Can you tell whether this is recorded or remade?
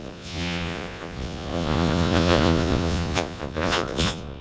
remade